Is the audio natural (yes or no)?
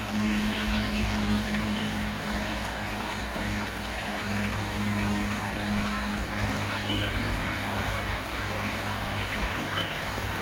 no